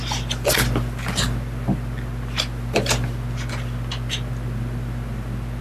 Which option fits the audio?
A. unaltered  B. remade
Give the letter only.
A